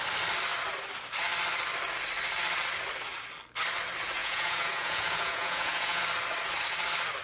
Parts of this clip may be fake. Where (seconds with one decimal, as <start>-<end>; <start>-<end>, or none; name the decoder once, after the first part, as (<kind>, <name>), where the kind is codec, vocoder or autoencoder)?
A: 4.2-6.0 (vocoder, Vocos)